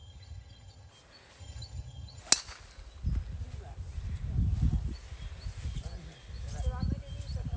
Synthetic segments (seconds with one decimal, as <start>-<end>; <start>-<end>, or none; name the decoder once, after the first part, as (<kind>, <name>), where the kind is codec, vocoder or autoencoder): 0.0-0.9 (vocoder, HiFi-GAN); 1.4-2.2